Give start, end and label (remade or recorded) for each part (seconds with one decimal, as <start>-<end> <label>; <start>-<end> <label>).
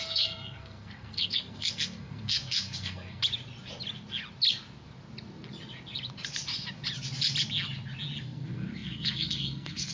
0.0-3.2 remade; 3.2-8.2 recorded; 8.2-9.9 remade